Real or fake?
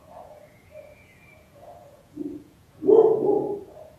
fake